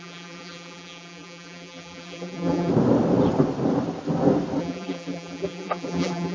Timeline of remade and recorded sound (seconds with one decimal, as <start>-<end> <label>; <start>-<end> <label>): 0.0-2.7 remade; 2.7-4.6 recorded; 4.6-6.3 remade